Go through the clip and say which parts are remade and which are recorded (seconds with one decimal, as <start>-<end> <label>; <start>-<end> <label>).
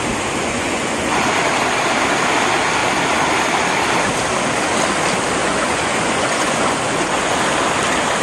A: 0.0-0.4 recorded; 0.4-1.4 remade; 1.4-5.4 recorded; 5.4-7.4 remade; 7.4-8.2 recorded